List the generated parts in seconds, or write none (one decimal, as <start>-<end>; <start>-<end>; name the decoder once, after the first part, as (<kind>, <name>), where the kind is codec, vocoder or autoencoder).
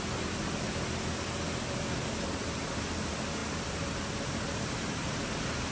none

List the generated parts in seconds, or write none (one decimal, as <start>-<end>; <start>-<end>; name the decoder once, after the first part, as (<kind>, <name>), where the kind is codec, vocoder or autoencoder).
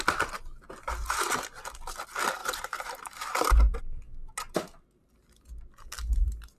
2.4-3.8 (vocoder, BigVGAN v2)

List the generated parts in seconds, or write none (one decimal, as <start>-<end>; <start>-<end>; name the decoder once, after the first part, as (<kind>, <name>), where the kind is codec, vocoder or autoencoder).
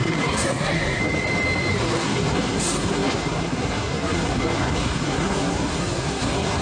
0.0-1.0 (codec, SNAC); 1.7-6.6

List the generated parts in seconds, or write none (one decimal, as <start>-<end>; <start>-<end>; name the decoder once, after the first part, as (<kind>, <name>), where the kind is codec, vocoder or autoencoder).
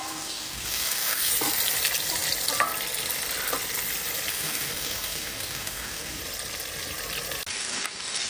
0.0-1.3 (codec, DAC); 4.3-6.2; 7.5-8.3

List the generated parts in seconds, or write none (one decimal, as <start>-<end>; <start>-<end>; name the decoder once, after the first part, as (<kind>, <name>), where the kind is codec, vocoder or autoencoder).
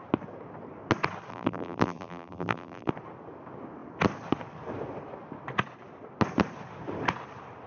1.3-2.9 (vocoder, BigVGAN v2)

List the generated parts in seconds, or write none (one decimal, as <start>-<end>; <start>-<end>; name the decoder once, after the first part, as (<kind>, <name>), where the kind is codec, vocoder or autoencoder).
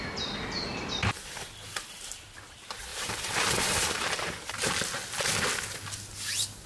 2.9-4.7 (vocoder, BigVGAN v2)